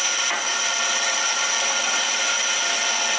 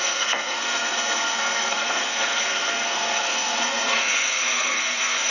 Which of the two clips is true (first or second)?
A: first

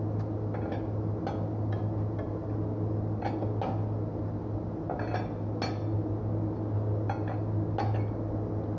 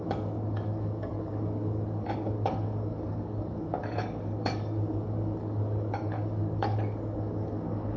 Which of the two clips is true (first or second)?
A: first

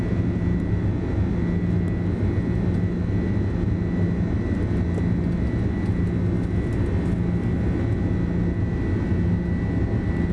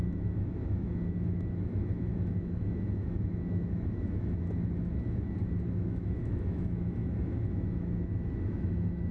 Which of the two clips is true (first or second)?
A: first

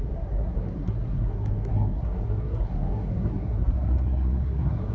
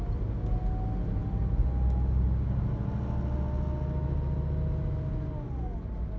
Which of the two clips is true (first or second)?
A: second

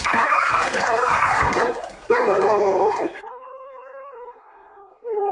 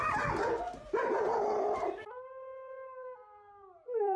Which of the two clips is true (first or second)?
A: second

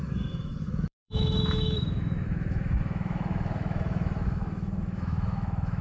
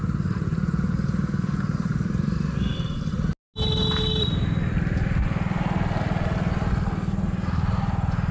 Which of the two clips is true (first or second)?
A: second